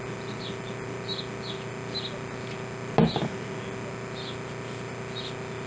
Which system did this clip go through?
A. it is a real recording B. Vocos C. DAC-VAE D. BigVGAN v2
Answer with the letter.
A